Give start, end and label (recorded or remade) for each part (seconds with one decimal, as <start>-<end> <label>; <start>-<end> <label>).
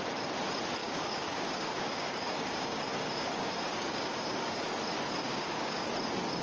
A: 0.0-0.8 recorded; 0.8-4.6 remade; 4.6-5.2 recorded; 5.2-5.9 remade; 5.9-6.4 recorded